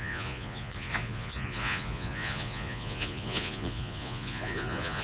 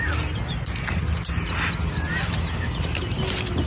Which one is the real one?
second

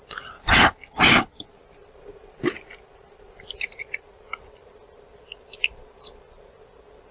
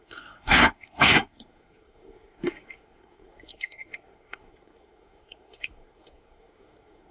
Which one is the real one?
first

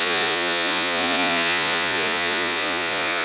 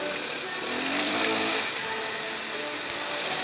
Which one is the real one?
second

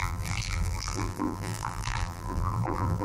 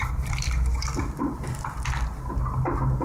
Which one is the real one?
second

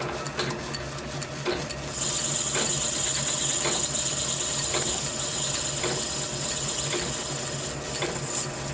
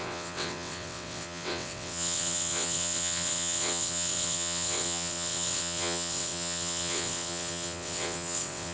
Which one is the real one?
first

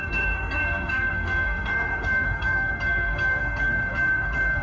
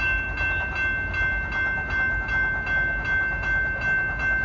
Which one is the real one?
second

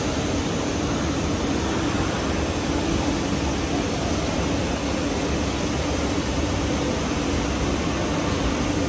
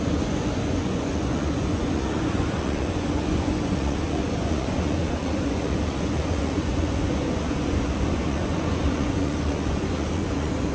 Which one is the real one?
first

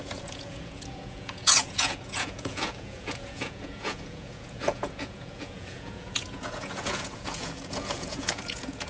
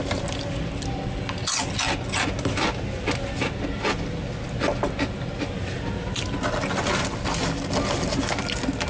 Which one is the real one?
second